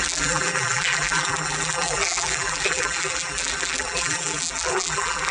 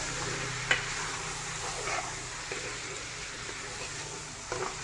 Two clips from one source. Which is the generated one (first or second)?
first